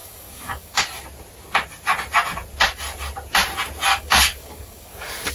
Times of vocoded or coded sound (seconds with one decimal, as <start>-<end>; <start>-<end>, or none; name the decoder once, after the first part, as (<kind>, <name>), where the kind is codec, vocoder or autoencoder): 0.0-0.8 (codec, DAC); 3.9-5.3